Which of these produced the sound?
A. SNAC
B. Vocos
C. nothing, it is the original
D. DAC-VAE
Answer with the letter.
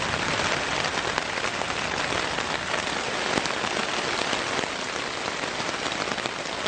C